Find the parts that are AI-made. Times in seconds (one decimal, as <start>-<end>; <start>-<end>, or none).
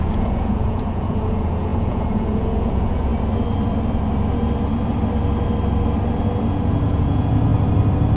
0.0-3.1; 6.5-7.5